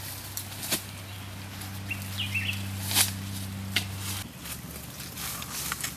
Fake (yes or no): no